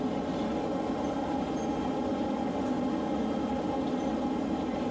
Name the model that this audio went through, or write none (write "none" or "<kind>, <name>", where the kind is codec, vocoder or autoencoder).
none